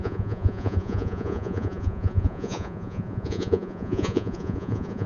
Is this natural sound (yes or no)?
no